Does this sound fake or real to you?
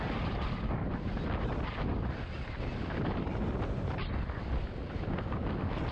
real